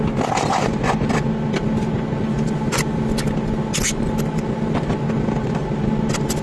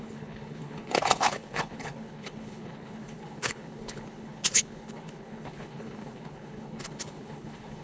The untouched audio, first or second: first